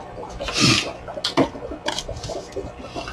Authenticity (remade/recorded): recorded